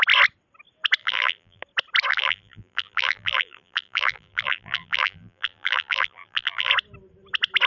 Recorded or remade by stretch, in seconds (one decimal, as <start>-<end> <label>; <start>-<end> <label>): 0.0-1.0 recorded; 1.0-1.6 remade; 1.6-2.1 recorded; 2.1-6.7 remade; 6.7-7.7 recorded